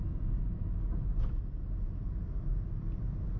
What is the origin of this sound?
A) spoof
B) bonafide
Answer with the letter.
B